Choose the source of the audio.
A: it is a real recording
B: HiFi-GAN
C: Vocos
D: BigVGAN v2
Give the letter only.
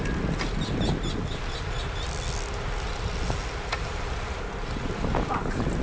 A